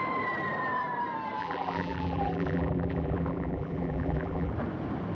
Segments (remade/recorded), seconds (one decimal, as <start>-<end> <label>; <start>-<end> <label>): 0.0-1.4 recorded; 1.4-4.5 remade; 4.5-5.1 recorded